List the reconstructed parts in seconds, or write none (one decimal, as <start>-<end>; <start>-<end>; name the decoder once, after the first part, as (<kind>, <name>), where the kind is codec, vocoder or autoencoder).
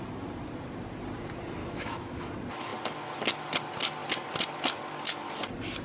1.6-2.3 (autoencoder, DAC-VAE)